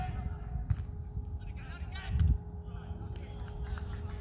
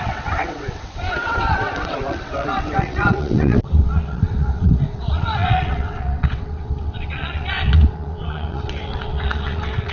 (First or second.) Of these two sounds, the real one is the first